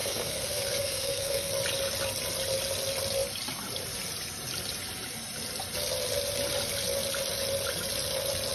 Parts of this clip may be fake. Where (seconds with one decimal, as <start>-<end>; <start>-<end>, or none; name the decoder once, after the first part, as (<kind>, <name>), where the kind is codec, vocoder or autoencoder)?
0.0-1.5 (codec, SNAC)